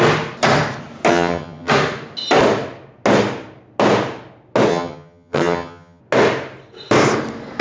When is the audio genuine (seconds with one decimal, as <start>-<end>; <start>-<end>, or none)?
0.0-1.1; 1.7-4.7; 6.0-7.6